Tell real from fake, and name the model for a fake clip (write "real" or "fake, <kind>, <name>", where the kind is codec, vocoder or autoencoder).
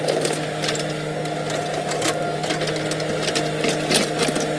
real